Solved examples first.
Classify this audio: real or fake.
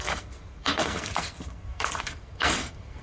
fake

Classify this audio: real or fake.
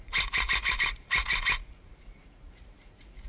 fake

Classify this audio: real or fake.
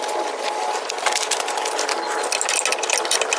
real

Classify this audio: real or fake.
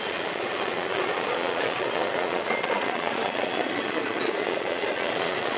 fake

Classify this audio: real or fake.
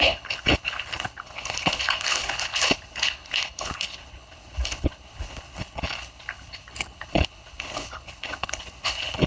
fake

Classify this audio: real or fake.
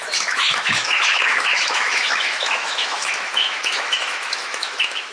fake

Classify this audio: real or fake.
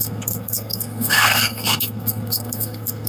fake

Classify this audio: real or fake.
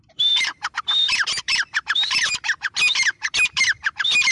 fake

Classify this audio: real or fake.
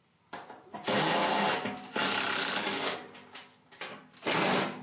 real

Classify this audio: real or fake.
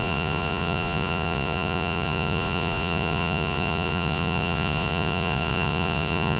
fake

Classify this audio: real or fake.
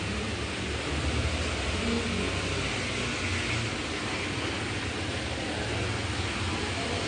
real